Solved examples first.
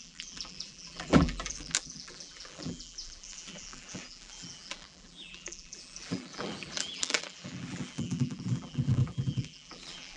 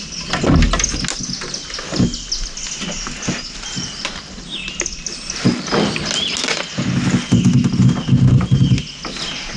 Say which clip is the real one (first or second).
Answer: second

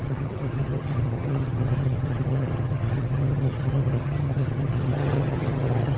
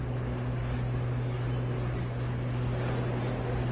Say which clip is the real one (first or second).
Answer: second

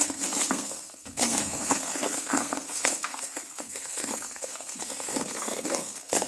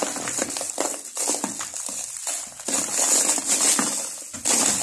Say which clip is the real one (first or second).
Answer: second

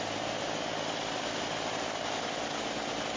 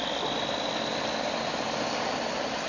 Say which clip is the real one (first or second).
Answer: first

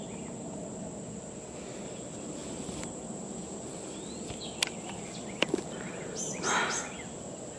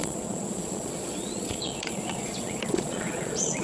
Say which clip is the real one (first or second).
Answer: first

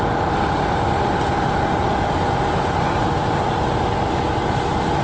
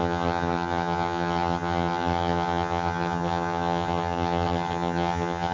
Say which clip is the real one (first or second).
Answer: first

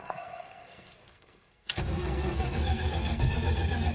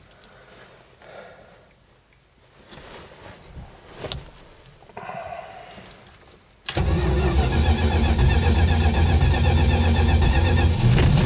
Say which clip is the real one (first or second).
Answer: second